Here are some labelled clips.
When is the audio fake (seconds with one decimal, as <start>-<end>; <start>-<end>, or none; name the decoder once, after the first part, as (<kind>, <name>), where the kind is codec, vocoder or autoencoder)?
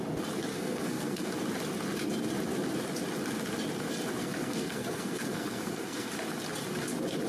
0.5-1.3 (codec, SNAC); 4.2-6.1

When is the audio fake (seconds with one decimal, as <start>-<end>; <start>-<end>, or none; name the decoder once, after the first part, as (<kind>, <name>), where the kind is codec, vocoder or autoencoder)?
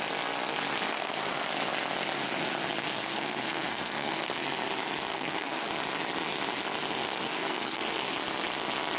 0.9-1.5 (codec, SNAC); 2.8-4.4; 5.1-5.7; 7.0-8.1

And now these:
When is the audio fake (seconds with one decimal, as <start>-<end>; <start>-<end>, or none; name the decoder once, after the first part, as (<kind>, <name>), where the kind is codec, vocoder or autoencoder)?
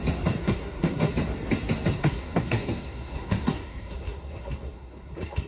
0.4-1.1 (codec, SNAC); 2.0-5.5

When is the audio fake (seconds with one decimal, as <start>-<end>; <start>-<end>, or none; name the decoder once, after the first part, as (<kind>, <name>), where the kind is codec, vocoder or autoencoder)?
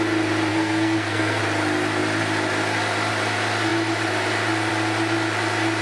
0.5-1.4 (codec, SNAC)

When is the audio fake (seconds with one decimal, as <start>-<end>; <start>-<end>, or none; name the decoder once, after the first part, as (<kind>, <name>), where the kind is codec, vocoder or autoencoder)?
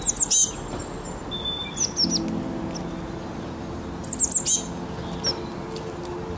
none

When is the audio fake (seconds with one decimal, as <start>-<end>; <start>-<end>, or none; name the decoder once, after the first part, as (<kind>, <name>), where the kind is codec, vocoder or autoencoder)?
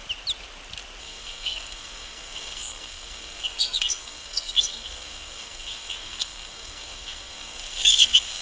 1.0-8.4 (codec, SNAC)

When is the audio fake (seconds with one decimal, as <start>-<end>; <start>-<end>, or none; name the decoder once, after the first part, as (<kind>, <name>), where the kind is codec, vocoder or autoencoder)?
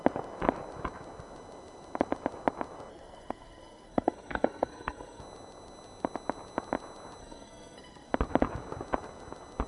2.9-5.2 (codec, SNAC); 7.2-8.1